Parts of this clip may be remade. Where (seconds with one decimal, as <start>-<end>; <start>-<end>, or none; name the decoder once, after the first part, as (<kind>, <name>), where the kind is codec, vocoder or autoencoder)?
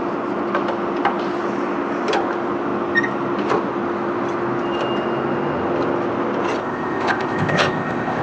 6.6-8.2 (codec, ZipCodec)